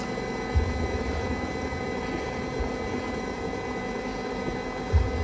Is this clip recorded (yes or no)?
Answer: no